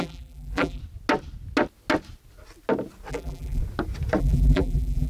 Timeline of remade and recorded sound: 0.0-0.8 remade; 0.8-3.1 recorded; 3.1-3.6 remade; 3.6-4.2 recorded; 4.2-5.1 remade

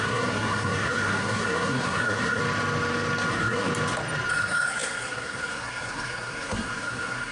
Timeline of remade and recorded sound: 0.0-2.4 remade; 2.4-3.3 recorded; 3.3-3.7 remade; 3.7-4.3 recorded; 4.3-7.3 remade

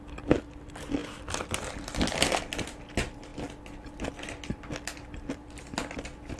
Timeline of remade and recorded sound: 0.0-6.4 recorded

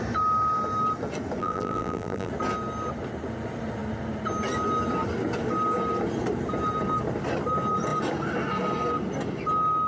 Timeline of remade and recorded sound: 0.0-1.4 recorded; 1.4-2.3 remade; 2.3-9.9 recorded